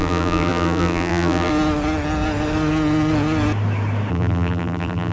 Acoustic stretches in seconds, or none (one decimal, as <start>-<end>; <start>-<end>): 1.5-4.1